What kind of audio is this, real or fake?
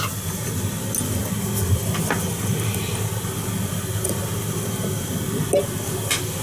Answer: real